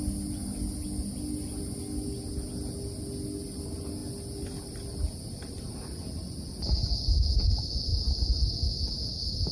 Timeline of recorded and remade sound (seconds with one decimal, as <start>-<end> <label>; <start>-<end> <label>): 0.0-9.5 recorded